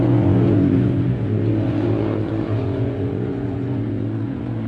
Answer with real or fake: fake